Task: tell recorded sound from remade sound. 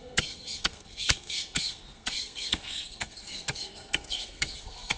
remade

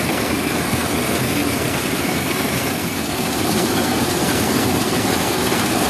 remade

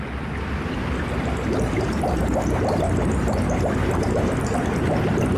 recorded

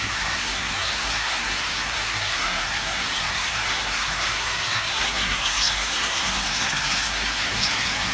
remade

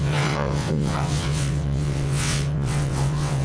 remade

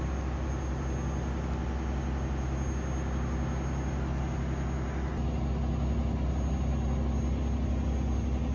recorded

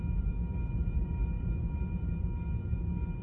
remade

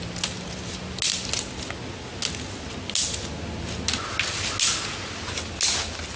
recorded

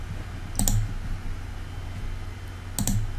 recorded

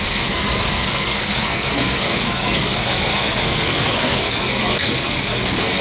remade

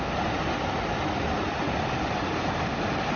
recorded